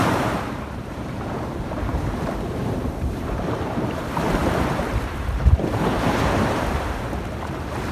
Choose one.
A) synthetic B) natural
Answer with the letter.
A